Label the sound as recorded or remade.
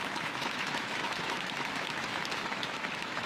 remade